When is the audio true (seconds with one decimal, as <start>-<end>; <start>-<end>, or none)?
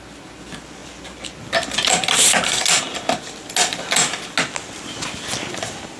0.0-6.0